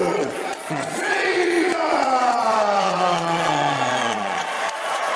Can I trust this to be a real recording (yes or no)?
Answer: no